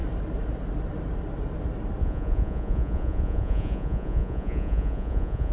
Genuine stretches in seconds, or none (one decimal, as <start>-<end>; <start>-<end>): 0.0-2.0